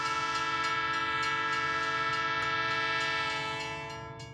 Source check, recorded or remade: recorded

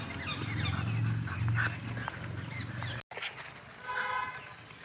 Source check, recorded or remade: recorded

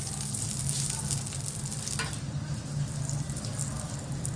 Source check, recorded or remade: recorded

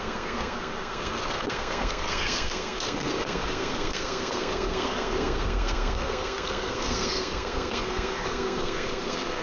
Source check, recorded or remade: remade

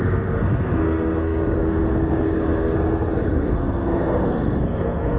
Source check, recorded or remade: remade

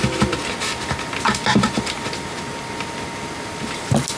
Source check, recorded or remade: recorded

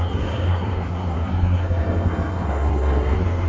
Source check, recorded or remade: remade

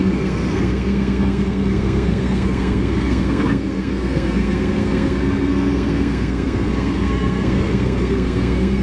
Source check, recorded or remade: remade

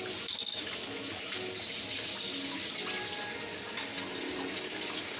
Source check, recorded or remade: recorded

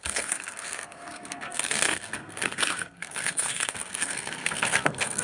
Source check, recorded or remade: remade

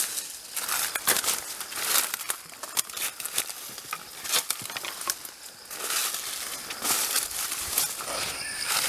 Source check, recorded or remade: recorded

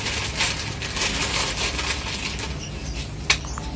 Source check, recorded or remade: recorded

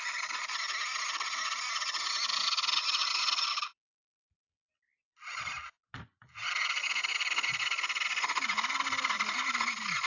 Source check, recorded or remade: recorded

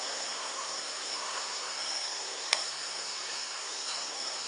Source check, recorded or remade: remade